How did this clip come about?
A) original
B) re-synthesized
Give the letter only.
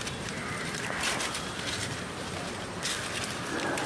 A